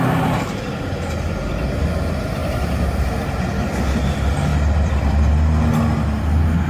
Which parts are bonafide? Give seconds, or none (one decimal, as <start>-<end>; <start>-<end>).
0.0-2.4; 3.5-6.7